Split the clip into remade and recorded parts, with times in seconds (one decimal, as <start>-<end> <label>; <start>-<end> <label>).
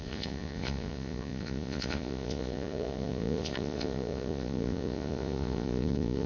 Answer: 0.0-6.3 remade